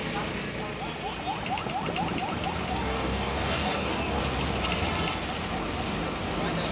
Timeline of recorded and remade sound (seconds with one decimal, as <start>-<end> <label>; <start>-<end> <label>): 0.0-2.7 recorded; 2.7-4.2 remade; 4.2-6.7 recorded